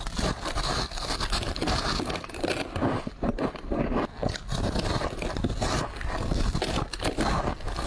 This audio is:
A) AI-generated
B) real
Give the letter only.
B